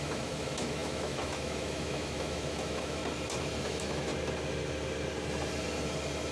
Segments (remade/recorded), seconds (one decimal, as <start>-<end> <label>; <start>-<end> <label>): 0.0-3.0 remade; 3.0-3.6 recorded; 3.6-4.1 remade; 4.1-6.3 recorded